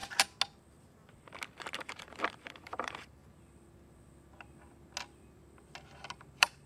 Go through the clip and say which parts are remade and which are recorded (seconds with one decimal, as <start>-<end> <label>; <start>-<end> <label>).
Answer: 0.0-1.6 recorded; 1.6-3.2 remade; 3.2-6.2 recorded; 6.2-6.7 remade